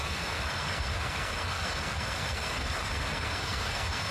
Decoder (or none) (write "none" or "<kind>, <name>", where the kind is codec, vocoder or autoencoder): codec, SNAC